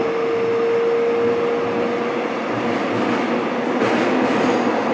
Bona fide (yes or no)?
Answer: yes